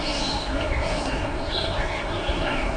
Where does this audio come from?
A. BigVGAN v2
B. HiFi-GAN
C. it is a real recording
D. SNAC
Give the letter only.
D